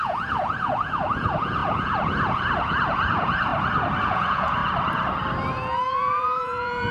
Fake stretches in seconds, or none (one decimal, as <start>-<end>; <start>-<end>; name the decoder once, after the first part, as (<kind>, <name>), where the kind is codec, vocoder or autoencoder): 0.0-3.5 (vocoder, Vocos); 4.0-4.6; 5.5-6.9